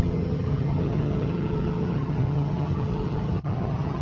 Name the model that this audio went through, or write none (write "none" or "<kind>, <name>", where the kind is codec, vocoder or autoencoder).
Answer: vocoder, HiFi-GAN